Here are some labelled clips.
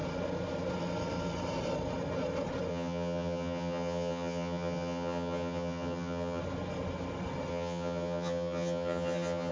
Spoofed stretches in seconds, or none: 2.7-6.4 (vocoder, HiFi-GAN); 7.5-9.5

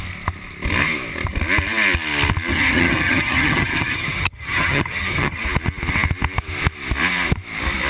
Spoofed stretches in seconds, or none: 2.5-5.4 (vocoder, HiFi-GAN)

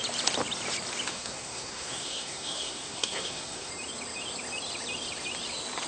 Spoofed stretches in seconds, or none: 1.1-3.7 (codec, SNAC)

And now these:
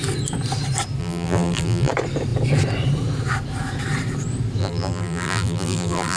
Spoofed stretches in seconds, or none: 1.0-1.9 (vocoder, BigVGAN v2); 4.6-6.2

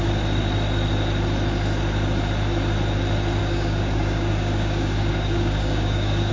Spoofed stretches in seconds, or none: 3.4-6.3 (codec, DAC)